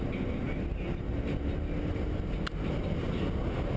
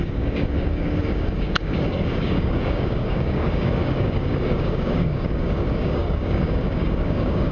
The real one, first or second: first